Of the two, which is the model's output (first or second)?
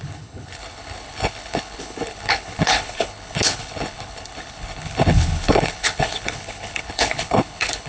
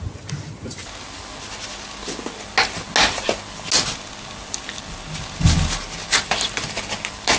first